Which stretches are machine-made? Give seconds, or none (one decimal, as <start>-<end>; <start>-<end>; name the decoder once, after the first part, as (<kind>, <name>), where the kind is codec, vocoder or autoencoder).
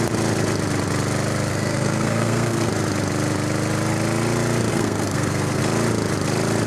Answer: 1.5-2.7 (codec, SNAC); 4.7-5.6